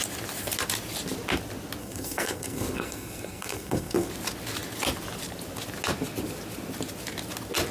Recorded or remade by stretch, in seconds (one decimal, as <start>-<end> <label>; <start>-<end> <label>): 0.0-1.8 recorded; 1.8-4.1 remade; 4.1-7.7 recorded